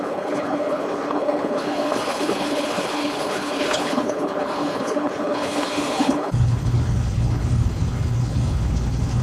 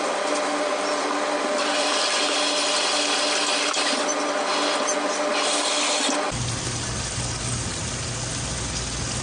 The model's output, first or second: first